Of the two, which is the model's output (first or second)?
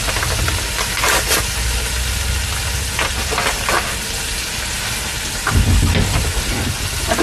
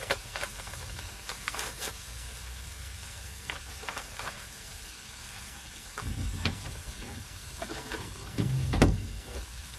second